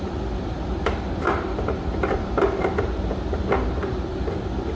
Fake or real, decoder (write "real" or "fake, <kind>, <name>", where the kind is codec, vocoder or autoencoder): real